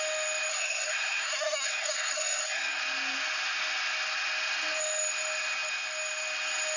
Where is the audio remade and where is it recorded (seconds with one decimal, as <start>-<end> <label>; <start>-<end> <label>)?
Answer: 0.0-0.5 recorded; 0.5-2.8 remade; 2.8-6.8 recorded